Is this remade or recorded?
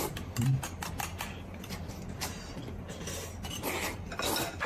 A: recorded